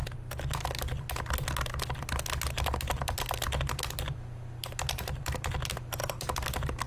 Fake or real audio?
real